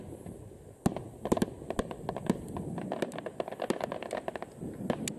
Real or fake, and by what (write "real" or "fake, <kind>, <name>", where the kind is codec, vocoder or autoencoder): real